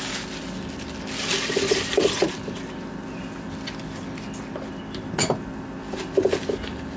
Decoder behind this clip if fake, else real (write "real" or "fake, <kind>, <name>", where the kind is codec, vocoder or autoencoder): real